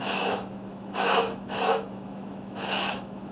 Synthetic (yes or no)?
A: yes